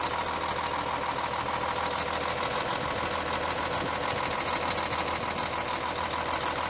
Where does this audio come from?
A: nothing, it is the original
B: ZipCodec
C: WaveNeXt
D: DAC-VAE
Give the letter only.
A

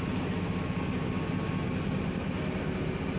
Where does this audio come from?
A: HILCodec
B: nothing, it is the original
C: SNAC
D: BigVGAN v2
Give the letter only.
B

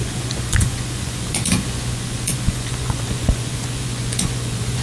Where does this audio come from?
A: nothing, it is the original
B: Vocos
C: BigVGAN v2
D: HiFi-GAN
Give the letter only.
B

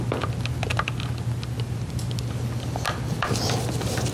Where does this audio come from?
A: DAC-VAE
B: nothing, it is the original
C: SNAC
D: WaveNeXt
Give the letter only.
B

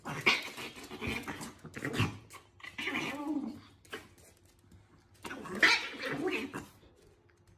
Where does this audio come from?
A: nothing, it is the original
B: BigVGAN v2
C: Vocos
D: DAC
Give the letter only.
A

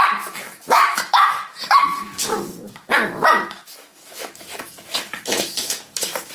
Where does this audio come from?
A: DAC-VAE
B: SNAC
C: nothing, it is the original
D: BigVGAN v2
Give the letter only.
A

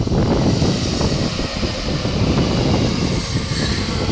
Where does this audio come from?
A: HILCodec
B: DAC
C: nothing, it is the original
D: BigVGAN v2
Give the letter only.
C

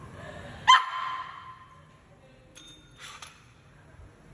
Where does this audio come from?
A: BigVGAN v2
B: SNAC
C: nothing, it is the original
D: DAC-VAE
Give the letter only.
C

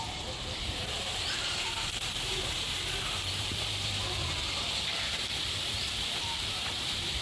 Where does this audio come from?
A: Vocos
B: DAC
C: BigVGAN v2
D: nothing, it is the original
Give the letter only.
C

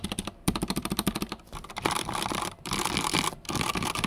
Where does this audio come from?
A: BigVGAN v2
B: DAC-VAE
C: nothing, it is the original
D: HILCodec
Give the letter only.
A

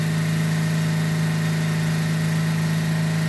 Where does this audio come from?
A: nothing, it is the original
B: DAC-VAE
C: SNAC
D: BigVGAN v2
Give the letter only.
A